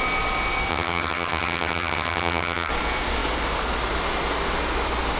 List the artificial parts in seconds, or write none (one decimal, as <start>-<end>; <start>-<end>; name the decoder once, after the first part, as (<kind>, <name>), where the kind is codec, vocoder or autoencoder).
0.7-2.7 (vocoder, HiFi-GAN)